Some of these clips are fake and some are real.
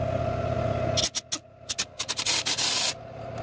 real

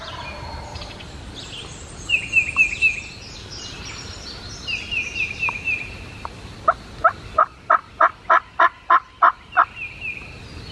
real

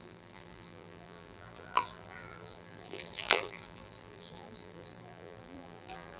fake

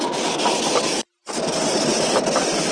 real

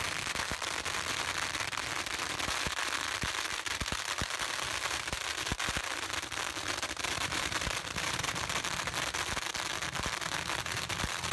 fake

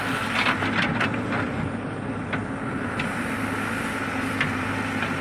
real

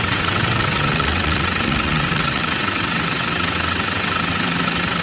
fake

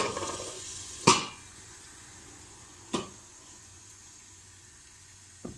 fake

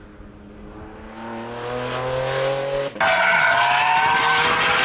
real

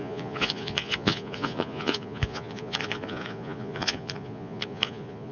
fake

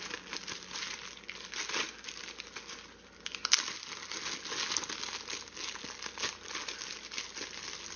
real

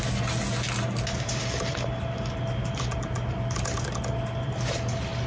real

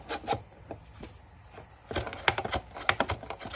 real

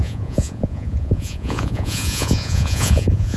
fake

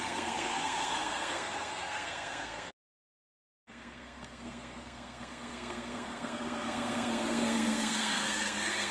fake